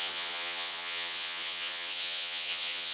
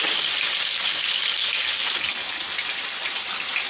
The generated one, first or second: first